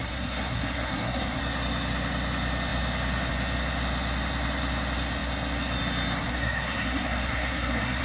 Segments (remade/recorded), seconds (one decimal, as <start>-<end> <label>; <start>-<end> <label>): 0.0-1.4 remade; 1.4-6.2 recorded; 6.2-8.0 remade